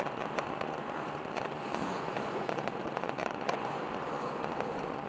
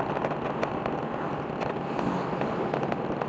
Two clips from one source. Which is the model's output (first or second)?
first